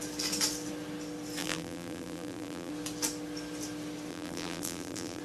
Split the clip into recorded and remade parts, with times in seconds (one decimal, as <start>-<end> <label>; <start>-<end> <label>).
0.0-1.4 recorded; 1.4-2.7 remade; 2.7-4.1 recorded; 4.1-5.2 remade